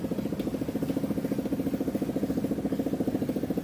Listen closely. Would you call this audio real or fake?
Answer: real